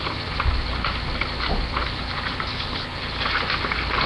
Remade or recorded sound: recorded